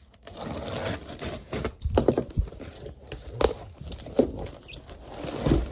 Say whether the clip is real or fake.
real